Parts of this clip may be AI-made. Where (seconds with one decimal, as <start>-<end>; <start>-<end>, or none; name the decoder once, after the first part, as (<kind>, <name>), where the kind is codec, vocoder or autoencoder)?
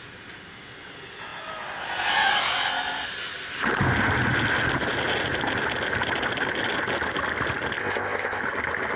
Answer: 7.8-8.4 (codec, ZipCodec)